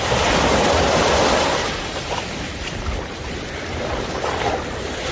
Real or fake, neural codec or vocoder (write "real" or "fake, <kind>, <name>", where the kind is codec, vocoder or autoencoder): real